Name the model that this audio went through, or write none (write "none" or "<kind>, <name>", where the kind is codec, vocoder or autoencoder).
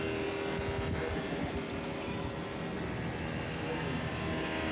none